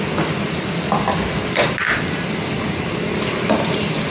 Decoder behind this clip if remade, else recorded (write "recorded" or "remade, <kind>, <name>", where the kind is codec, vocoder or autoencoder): recorded